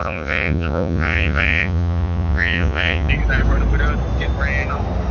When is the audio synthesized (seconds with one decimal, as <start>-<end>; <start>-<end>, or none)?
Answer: 0.0-3.1